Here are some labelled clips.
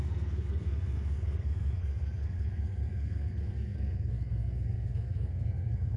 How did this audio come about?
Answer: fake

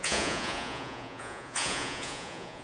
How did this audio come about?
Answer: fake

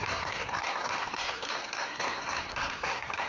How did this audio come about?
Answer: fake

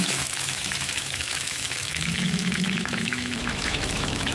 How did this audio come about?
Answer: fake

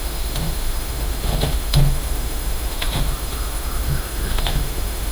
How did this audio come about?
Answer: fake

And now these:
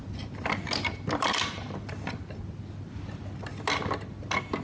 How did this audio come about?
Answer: real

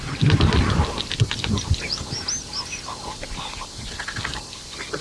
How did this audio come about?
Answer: real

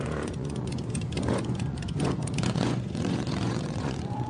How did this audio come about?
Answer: fake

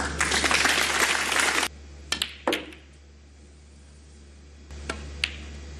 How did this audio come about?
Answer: real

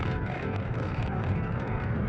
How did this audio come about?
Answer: fake